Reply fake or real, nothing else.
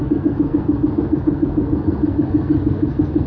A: fake